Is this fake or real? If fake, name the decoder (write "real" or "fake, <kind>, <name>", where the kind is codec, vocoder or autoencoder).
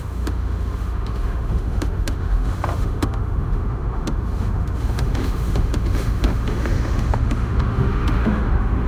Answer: fake, autoencoder, DAC-VAE